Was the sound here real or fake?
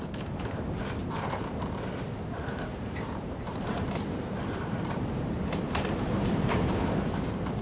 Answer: fake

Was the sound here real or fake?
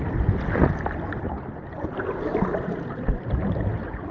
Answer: real